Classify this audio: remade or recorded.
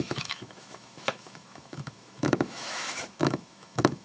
remade